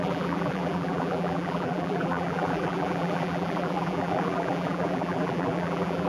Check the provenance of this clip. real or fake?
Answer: fake